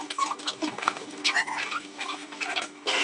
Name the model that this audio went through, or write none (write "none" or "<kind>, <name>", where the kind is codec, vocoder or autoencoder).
codec, DAC